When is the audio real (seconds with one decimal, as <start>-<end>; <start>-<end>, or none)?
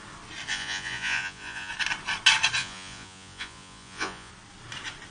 0.0-0.5; 1.7-2.6; 4.3-5.1